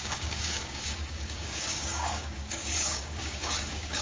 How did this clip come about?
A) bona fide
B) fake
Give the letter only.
B